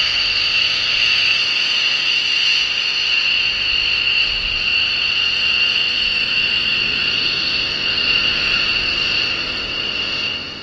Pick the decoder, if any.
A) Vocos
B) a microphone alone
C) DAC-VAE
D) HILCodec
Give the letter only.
B